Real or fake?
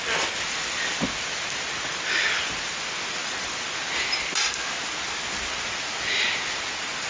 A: real